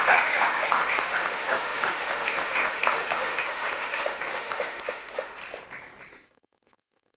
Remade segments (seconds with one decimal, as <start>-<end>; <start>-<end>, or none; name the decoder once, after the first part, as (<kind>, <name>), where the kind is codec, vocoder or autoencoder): 0.0-5.4 (autoencoder, DAC-VAE); 6.1-7.2